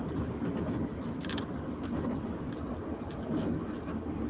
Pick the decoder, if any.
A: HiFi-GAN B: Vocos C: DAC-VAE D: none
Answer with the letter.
D